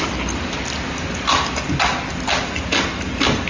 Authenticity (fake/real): real